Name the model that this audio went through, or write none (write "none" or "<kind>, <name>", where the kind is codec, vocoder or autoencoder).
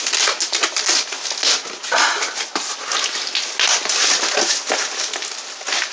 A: none